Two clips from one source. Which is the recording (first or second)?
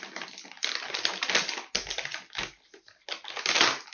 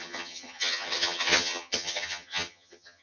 first